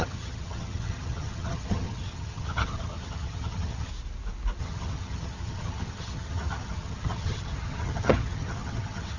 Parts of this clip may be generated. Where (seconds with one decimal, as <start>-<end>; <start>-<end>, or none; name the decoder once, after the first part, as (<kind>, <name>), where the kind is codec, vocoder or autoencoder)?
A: 0.0-3.9 (vocoder, HiFi-GAN); 4.6-9.2